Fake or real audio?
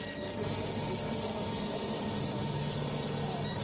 real